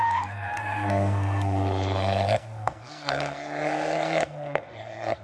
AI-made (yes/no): yes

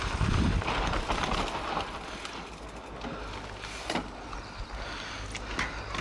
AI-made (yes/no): no